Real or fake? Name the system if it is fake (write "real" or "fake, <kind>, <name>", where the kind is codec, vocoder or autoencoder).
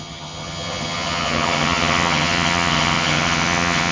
fake, vocoder, HiFi-GAN